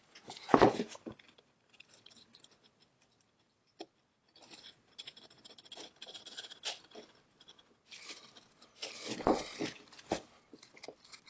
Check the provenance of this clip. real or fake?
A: real